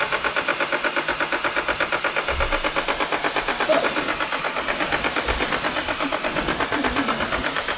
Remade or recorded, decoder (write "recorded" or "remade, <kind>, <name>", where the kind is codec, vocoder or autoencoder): recorded